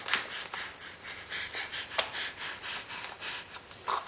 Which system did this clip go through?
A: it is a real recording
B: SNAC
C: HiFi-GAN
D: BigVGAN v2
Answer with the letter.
A